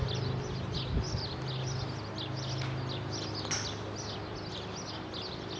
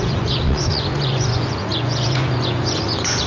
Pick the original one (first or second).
first